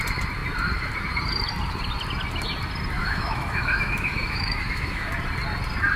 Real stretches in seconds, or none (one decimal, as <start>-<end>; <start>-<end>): 0.0-3.0; 5.1-6.0